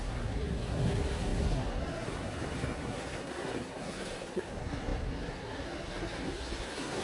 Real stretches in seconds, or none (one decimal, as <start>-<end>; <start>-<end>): none